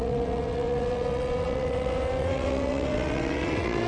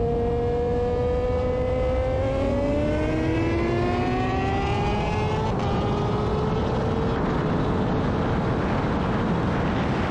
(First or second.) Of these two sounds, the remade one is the first